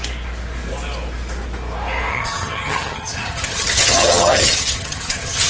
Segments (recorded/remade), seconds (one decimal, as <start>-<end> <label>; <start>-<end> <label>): 0.0-2.1 recorded; 2.1-5.5 remade